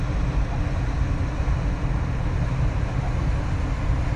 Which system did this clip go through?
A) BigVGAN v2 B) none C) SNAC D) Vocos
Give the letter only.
B